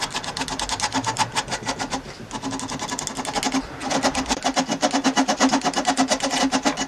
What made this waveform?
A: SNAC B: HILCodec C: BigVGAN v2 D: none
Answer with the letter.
D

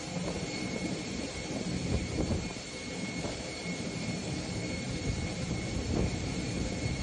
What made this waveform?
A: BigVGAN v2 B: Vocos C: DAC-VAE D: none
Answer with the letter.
A